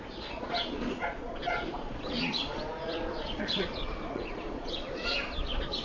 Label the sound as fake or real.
fake